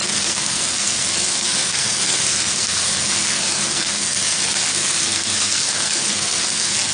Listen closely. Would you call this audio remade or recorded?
remade